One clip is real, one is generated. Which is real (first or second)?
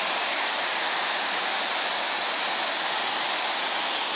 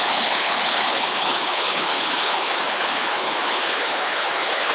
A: first